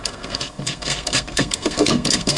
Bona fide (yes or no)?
no